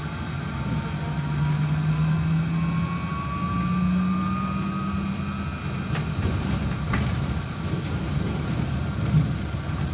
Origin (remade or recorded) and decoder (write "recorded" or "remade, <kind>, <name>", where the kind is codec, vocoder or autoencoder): recorded